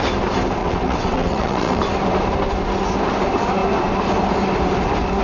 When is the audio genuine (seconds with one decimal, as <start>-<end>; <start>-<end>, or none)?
0.0-0.6; 1.8-5.2